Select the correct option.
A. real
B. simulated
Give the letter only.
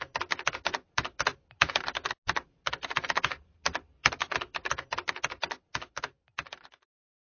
A